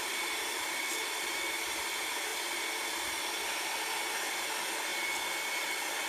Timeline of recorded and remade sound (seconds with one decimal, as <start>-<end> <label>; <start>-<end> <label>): 0.0-2.3 remade; 2.3-4.1 recorded; 4.1-4.9 remade; 4.9-5.5 recorded; 5.5-6.1 remade